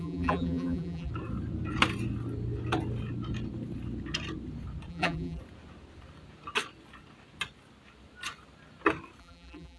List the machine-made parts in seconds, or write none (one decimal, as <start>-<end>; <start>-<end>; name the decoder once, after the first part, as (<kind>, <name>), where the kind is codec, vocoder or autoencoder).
0.0-1.1 (vocoder, BigVGAN v2); 4.9-5.4; 9.2-9.8

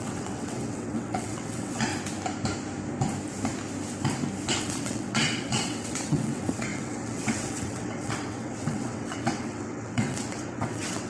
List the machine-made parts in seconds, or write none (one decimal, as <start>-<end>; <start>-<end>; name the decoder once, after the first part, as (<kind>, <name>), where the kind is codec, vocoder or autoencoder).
0.0-1.9 (vocoder, WaveNeXt); 4.6-11.1

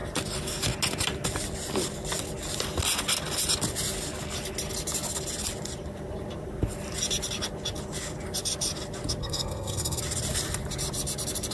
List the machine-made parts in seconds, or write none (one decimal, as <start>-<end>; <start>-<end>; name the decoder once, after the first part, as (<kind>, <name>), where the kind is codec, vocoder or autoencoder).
9.2-10.0 (codec, SNAC)

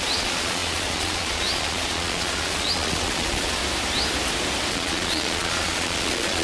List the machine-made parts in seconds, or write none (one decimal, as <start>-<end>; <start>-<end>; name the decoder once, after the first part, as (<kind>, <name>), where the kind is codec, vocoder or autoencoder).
0.0-3.6 (vocoder, Vocos); 4.7-6.4

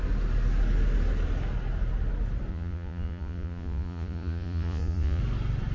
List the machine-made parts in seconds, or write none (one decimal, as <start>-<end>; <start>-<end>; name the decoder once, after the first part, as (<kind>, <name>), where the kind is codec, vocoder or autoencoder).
2.5-5.2 (vocoder, Vocos)

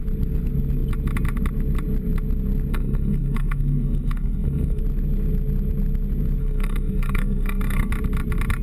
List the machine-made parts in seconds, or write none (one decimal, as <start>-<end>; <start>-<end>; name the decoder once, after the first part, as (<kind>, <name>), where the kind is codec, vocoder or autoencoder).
2.7-4.8 (codec, SNAC); 6.4-7.9

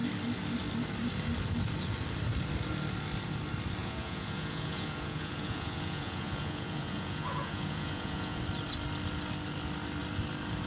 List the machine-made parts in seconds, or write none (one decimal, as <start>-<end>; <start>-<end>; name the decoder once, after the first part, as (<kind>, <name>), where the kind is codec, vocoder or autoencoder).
3.8-8.4 (vocoder, Vocos)

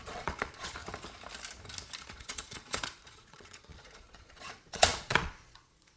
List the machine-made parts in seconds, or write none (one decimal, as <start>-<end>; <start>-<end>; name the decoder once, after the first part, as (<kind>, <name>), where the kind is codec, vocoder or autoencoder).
0.0-0.8 (vocoder, Vocos); 2.0-6.0